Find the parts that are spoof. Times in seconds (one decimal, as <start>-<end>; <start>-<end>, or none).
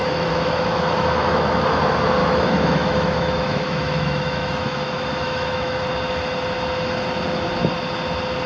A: 0.0-1.8; 2.2-5.8